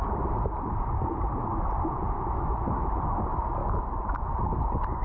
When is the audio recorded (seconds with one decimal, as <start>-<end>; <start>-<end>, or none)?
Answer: 0.0-5.0